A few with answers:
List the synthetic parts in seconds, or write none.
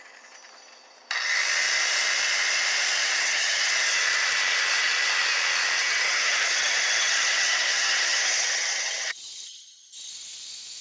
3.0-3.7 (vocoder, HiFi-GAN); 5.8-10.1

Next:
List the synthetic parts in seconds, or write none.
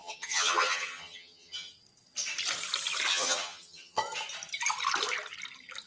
0.0-1.7 (vocoder, HiFi-GAN); 3.1-4.0